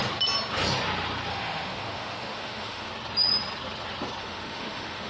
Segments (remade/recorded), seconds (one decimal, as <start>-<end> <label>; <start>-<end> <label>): 0.0-1.3 recorded; 1.3-2.9 remade; 2.9-4.2 recorded; 4.2-5.1 remade